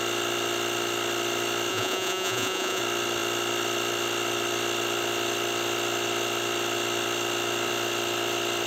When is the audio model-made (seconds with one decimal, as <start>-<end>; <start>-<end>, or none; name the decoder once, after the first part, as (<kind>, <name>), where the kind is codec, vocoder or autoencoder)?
1.7-2.8 (vocoder, Vocos)